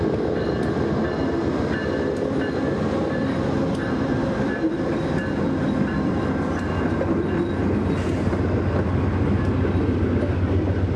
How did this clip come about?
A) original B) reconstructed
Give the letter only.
A